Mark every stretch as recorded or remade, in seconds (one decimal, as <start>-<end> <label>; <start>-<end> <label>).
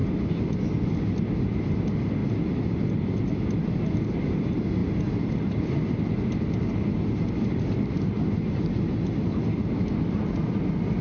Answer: 0.0-11.0 recorded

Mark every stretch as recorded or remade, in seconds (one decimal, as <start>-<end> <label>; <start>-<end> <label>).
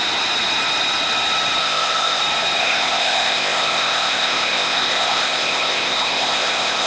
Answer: 0.0-1.6 recorded; 1.6-2.2 remade; 2.2-2.6 recorded; 2.6-6.9 remade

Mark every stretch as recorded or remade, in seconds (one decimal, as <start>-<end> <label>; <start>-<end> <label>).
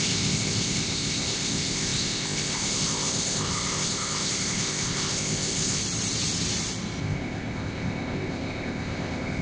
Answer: 0.0-5.8 remade; 5.8-7.0 recorded; 7.0-9.4 remade